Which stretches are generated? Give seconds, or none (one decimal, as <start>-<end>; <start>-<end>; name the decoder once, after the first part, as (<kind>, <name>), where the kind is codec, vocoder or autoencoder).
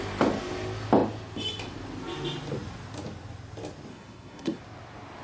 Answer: 3.9-4.6 (codec, SNAC)